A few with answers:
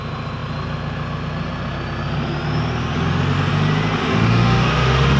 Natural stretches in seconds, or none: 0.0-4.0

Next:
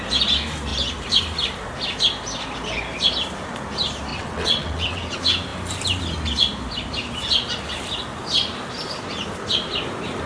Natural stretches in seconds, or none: 0.0-4.1; 5.0-10.3

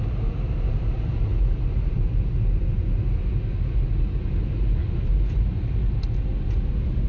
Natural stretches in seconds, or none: 0.0-7.1

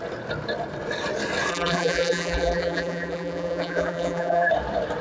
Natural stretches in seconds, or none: 0.0-1.5; 4.5-5.0

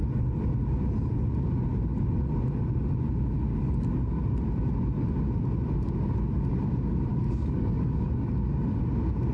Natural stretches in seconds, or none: 0.0-3.6; 4.2-7.1; 8.3-9.3

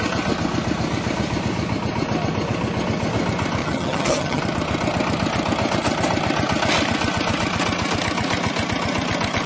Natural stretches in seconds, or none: 0.0-3.6; 4.4-9.5

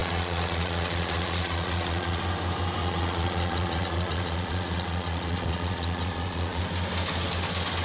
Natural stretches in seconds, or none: 2.2-2.8; 6.6-7.8